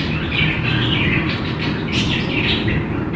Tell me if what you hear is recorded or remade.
recorded